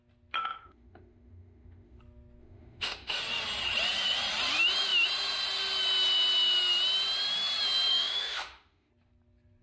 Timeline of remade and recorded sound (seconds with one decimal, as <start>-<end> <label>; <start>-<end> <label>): 0.0-0.4 recorded; 0.4-2.0 remade; 2.0-2.4 recorded; 2.4-3.2 remade; 3.2-7.9 recorded; 7.9-8.9 remade; 8.9-9.6 recorded

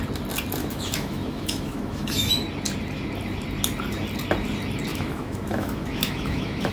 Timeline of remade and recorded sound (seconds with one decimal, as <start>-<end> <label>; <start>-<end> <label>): 0.0-0.6 recorded; 0.6-2.3 remade; 2.3-4.9 recorded; 4.9-6.7 remade